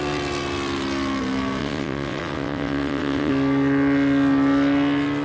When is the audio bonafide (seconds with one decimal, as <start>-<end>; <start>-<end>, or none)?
0.0-1.6; 3.3-5.2